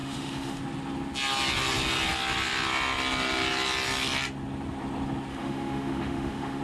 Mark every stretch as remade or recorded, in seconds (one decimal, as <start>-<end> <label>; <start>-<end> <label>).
0.0-0.6 remade; 0.6-5.3 recorded; 5.3-6.6 remade